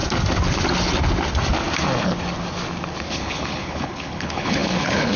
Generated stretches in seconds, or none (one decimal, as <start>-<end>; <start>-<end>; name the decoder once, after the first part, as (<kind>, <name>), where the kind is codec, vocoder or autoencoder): 3.1-5.2 (codec, HILCodec)